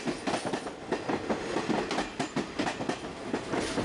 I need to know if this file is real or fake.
real